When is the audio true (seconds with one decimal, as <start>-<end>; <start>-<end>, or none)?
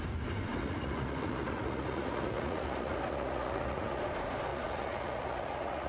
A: 0.0-0.5; 4.0-4.5